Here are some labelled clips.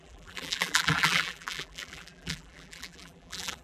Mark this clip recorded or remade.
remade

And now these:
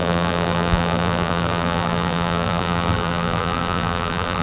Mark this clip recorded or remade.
remade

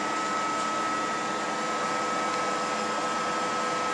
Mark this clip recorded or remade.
recorded